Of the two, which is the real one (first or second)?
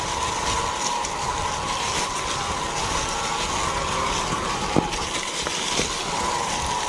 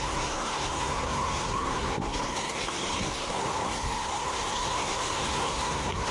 first